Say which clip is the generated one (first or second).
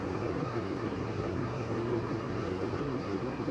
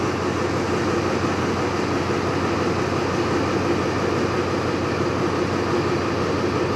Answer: first